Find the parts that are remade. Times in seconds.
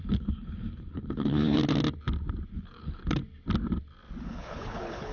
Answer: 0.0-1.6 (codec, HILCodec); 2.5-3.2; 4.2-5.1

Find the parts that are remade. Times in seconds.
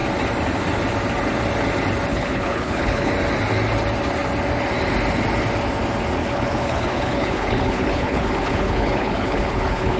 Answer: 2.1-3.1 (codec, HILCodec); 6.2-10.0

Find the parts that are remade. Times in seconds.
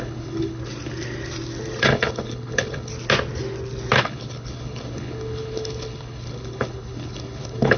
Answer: 0.0-0.6 (codec, HILCodec); 1.8-2.9; 4.0-7.8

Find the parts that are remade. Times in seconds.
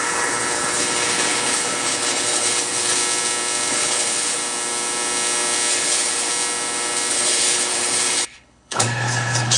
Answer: 0.0-3.0 (codec, HILCodec); 3.7-4.4; 5.7-6.3; 7.1-9.6